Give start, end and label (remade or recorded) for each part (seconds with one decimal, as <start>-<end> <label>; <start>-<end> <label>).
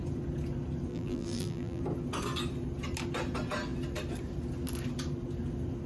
0.0-0.9 recorded; 0.9-1.8 remade; 1.8-5.9 recorded